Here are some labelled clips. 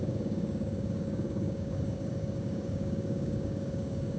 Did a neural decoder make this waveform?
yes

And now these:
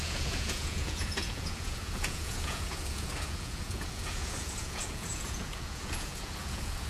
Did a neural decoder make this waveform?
yes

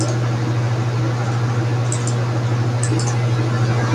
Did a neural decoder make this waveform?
no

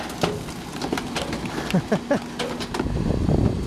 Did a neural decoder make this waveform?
no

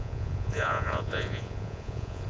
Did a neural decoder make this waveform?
yes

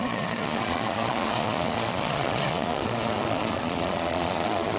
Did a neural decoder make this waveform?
yes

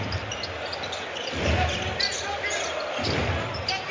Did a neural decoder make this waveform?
no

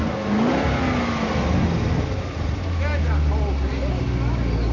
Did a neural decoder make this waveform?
no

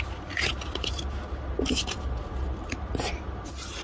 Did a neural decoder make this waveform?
no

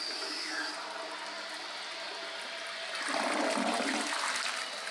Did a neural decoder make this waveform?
no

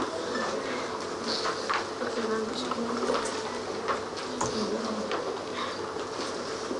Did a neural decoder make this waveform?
no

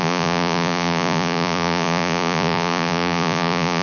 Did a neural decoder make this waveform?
yes